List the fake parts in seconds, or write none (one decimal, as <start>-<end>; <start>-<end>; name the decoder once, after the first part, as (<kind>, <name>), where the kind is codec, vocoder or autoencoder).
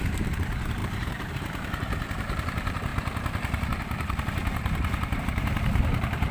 0.0-6.3 (vocoder, BigVGAN v2)